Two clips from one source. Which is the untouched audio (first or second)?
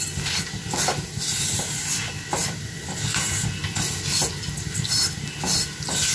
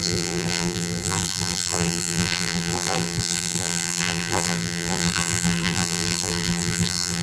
first